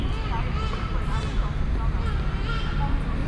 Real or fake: real